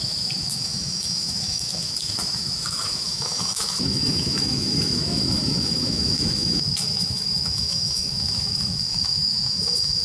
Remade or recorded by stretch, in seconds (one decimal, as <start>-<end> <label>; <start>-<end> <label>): 0.0-10.0 remade

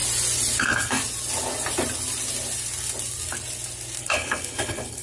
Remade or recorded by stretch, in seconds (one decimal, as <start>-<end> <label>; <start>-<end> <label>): 0.0-0.6 recorded; 0.6-1.0 remade; 1.0-4.0 recorded; 4.0-5.0 remade